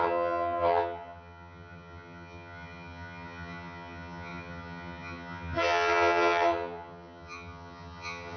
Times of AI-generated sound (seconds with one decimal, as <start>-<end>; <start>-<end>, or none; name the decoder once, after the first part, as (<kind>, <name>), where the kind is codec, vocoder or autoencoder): 0.0-8.4 (vocoder, HiFi-GAN)